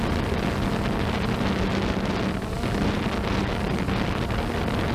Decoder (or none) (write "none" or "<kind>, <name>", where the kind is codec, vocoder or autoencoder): none